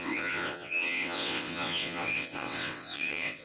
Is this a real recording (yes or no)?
no